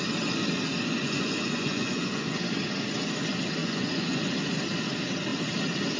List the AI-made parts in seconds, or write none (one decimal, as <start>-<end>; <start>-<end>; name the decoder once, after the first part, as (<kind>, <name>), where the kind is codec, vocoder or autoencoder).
1.0-2.4 (vocoder, Vocos); 3.6-4.2

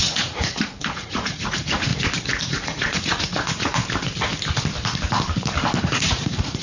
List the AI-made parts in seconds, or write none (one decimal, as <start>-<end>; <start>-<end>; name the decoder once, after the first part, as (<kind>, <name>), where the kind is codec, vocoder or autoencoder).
0.0-1.9 (vocoder, Vocos); 2.4-3.8; 5.8-6.6

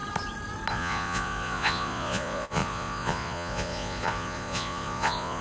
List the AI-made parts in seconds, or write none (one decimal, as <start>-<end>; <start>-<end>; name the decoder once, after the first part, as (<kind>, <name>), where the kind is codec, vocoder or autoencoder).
0.7-5.4 (vocoder, Vocos)

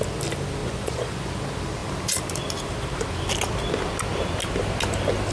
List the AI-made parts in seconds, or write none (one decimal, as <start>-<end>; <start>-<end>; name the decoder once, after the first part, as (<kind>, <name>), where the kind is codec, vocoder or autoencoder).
0.6-1.3 (vocoder, Vocos)

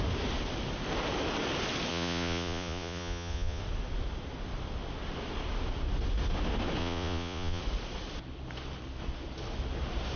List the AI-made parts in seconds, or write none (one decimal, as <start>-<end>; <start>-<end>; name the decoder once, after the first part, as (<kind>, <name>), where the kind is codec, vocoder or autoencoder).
1.9-3.6 (vocoder, Vocos); 6.8-7.6